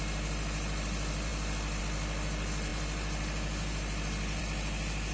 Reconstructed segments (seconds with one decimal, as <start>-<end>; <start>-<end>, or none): none